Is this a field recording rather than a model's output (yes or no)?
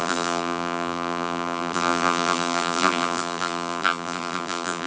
no